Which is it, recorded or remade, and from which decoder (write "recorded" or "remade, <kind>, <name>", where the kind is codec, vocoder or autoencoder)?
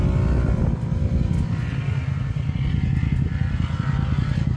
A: recorded